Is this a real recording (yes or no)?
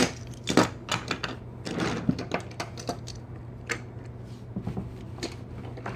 yes